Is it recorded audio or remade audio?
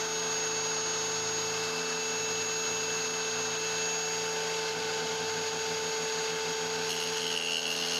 recorded